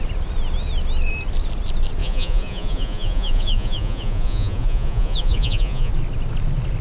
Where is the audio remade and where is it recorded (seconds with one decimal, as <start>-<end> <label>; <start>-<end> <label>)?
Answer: 0.0-2.0 recorded; 2.0-5.9 remade; 5.9-6.8 recorded